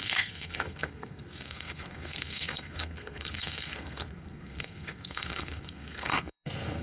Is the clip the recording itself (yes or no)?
no